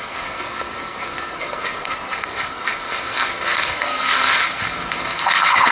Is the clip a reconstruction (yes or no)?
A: yes